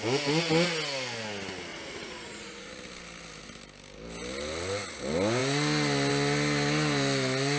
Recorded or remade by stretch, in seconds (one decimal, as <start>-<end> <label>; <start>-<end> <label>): 0.0-1.7 recorded; 1.7-2.7 remade; 2.7-7.6 recorded